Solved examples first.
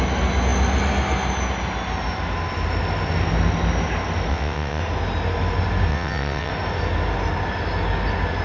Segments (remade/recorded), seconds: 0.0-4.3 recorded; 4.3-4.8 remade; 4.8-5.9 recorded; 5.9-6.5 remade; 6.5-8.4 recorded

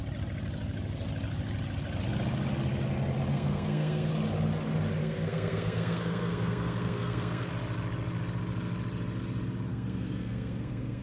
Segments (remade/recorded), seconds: 0.0-3.3 recorded; 3.3-4.1 remade; 4.1-5.0 recorded; 5.0-7.5 remade; 7.5-9.7 recorded; 9.7-11.0 remade

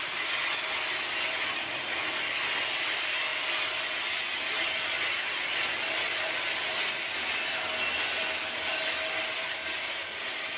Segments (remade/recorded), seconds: 0.0-10.6 recorded

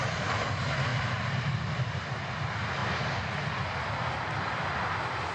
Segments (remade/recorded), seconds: 0.0-0.5 remade; 0.5-0.9 recorded; 0.9-1.6 remade; 1.6-5.3 recorded

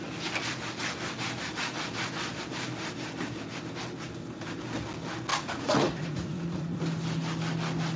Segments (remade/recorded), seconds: 0.0-5.3 recorded; 5.3-6.8 remade; 6.8-8.0 recorded

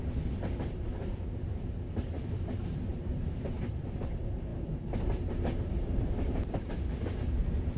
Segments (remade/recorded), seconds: 0.0-2.9 recorded; 2.9-3.7 remade; 3.7-4.5 recorded; 4.5-6.7 remade; 6.7-7.8 recorded

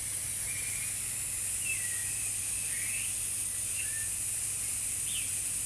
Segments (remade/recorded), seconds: 0.0-5.7 recorded

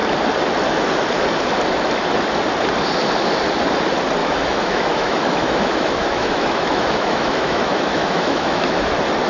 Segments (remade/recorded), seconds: 0.0-4.2 recorded; 4.2-8.9 remade; 8.9-9.3 recorded